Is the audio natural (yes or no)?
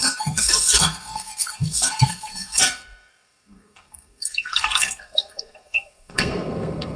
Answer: no